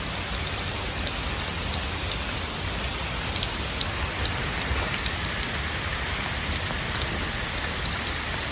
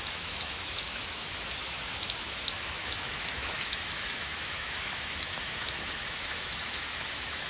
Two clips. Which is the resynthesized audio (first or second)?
second